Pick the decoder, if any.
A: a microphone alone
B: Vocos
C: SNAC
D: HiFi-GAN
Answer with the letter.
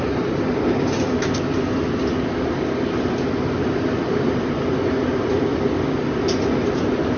A